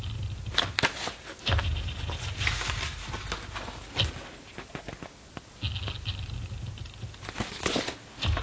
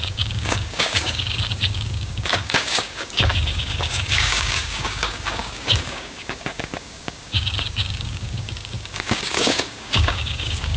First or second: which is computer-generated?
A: second